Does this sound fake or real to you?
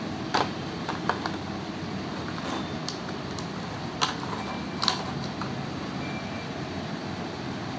real